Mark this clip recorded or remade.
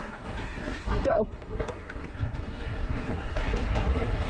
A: remade